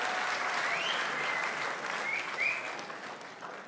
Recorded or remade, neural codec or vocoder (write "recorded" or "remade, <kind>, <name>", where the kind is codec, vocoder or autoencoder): recorded